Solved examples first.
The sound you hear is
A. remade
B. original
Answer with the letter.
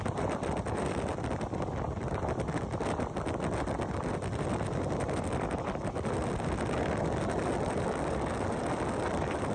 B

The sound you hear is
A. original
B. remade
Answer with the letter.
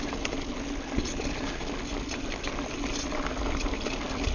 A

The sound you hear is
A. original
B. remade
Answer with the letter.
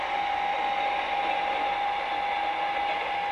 A